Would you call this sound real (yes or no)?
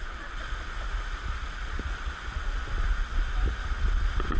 yes